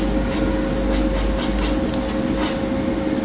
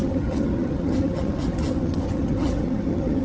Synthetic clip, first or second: second